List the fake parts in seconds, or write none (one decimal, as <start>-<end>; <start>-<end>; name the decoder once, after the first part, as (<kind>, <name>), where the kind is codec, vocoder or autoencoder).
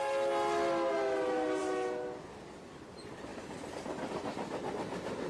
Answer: none